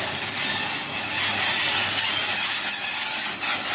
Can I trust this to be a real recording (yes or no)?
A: yes